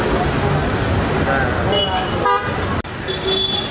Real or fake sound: real